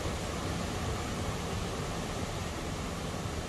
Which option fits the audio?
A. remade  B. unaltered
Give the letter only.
B